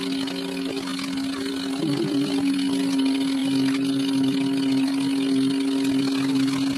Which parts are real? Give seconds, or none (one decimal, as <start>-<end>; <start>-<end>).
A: 0.0-6.8